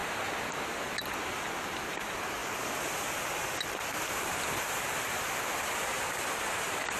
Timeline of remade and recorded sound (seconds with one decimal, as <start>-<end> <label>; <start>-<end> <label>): 0.0-7.0 recorded